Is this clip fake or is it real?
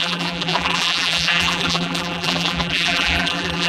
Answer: fake